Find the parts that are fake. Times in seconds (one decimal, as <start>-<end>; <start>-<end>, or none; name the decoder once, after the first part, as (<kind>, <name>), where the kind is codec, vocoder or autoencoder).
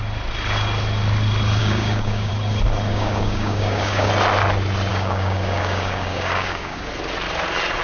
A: 1.6-2.3 (codec, DAC); 2.9-4.1; 4.9-6.9